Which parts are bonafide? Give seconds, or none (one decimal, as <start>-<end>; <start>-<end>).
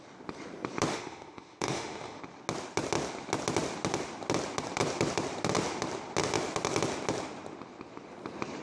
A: 0.0-0.9; 2.2-8.6